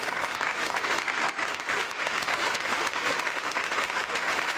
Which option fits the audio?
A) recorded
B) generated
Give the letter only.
B